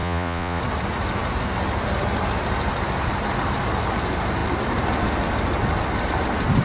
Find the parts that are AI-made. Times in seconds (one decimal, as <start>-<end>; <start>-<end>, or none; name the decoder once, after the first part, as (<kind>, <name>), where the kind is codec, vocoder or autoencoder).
0.0-0.6 (vocoder, Vocos)